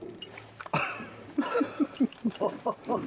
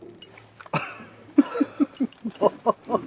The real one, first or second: second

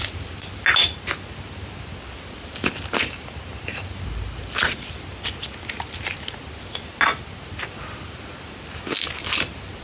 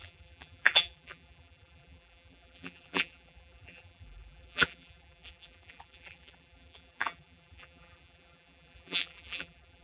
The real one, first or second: first